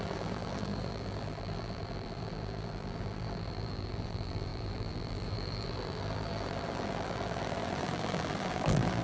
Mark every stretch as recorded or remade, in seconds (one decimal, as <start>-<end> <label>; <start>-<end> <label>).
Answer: 0.0-9.0 remade